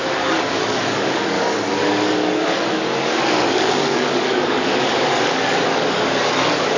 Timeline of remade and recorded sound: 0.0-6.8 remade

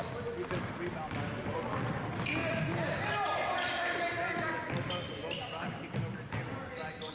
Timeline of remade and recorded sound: 0.0-7.1 recorded